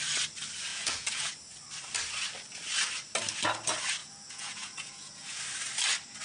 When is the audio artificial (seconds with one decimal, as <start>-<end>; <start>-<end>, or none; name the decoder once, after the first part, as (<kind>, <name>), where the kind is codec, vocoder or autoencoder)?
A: 0.7-1.3 (vocoder, Vocos); 4.0-5.4